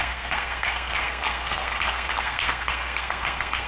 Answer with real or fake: fake